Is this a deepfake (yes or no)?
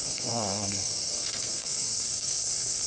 yes